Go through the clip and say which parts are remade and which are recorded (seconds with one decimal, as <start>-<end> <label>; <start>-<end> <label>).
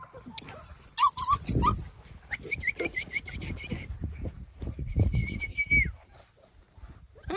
0.0-4.0 recorded; 4.0-5.4 remade; 5.4-7.4 recorded